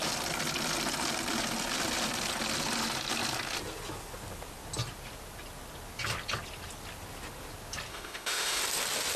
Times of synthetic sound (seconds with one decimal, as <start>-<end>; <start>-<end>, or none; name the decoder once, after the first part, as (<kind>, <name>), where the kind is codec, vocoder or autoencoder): 7.9-8.6 (autoencoder, DAC-VAE)